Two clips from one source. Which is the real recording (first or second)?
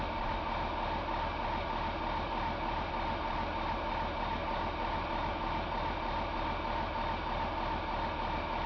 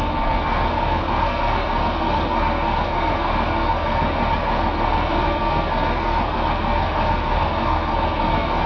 first